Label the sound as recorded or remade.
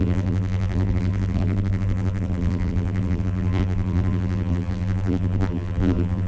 remade